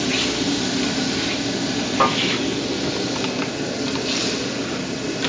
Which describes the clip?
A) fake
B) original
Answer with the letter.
B